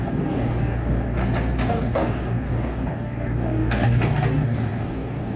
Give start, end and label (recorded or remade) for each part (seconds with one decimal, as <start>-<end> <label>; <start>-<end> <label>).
0.0-1.2 remade; 1.2-1.7 recorded; 1.7-5.4 remade